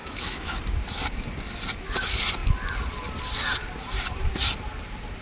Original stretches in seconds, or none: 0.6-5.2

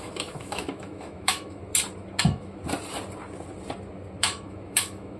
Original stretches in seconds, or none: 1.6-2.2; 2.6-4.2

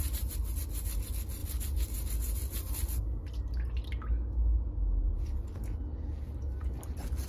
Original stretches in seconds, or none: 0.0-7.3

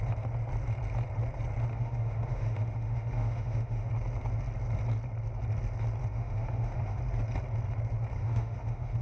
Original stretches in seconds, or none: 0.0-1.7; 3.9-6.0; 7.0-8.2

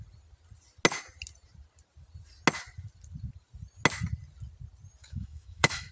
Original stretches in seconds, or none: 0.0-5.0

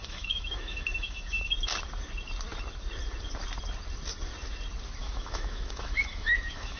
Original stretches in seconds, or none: 1.5-5.0